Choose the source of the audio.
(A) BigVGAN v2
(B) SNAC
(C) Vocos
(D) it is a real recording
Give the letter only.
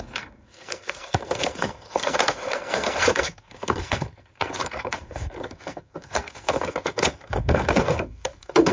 B